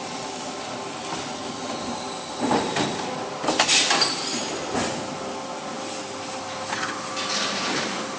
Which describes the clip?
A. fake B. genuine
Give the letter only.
B